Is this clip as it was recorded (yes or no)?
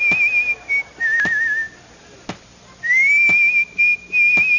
yes